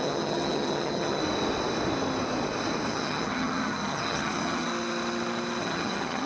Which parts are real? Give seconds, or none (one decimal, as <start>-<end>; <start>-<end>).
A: 1.2-2.9; 4.7-5.6

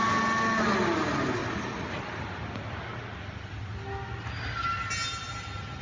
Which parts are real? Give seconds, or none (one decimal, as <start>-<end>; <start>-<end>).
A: 0.0-5.8

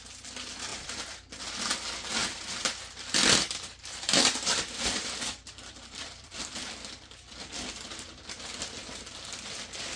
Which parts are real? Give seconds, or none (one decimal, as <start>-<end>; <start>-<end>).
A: 0.0-2.2; 6.3-10.0

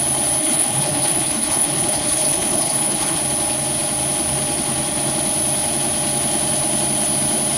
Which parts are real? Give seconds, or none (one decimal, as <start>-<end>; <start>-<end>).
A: 0.0-0.4; 3.2-7.6

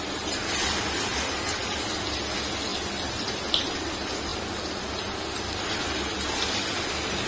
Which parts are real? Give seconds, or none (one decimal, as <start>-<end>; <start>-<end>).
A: 0.0-7.3

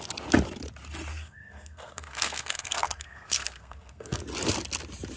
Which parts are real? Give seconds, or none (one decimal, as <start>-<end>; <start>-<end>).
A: 0.0-1.1; 4.2-5.2